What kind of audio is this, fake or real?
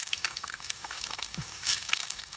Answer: fake